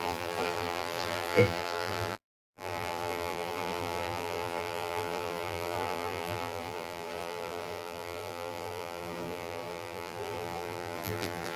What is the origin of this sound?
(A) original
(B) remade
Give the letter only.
B